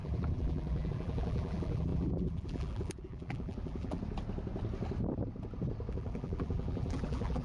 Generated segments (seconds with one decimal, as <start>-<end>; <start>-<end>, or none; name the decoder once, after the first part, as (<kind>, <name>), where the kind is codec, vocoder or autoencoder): 0.0-4.0 (vocoder, BigVGAN v2); 5.9-7.4